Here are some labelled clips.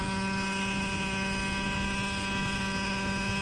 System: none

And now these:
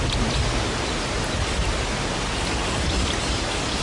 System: none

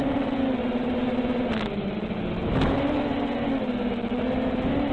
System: none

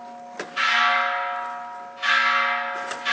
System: none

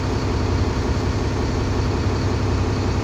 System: none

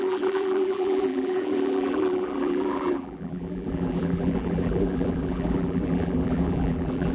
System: vocoder, BigVGAN v2